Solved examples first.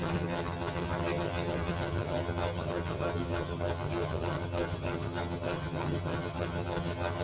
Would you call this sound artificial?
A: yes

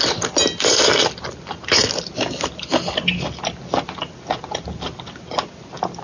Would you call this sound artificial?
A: no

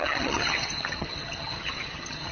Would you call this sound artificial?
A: yes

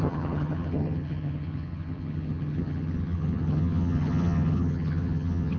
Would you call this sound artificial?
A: yes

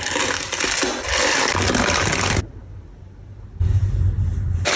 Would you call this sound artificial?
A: no